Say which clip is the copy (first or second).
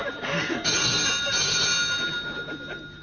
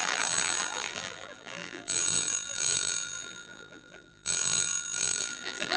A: second